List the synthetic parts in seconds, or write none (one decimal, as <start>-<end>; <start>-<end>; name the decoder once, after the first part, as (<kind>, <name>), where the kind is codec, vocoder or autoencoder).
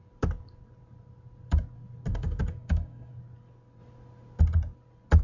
2.1-3.1 (codec, DAC)